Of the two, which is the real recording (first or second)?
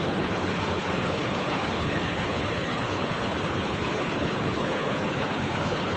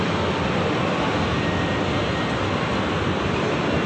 second